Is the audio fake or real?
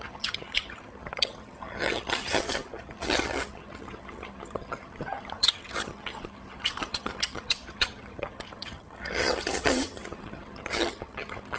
fake